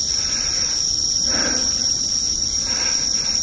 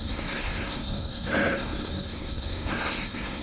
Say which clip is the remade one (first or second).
second